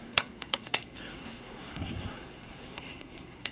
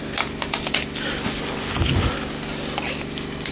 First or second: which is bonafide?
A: second